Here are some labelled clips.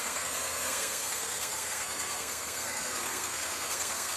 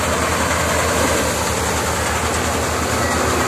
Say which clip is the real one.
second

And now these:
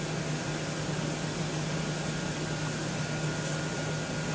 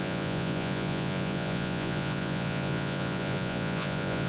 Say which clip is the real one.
first